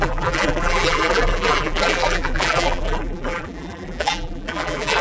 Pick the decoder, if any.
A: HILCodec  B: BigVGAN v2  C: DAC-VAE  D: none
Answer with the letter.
B